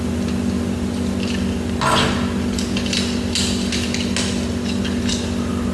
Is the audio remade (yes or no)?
no